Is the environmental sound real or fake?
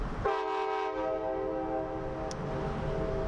real